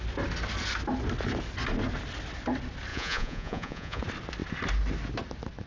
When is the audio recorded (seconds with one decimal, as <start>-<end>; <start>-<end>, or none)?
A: 0.0-2.9; 4.0-5.7